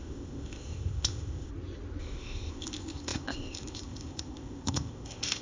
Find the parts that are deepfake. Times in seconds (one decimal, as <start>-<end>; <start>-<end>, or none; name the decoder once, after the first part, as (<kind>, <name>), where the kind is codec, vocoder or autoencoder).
0.0-1.5 (codec, ZipCodec); 2.0-5.4